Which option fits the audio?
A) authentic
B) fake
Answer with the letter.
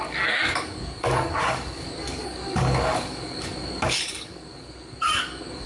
B